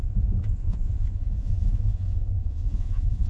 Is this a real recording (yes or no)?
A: no